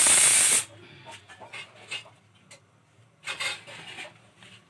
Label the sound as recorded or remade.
recorded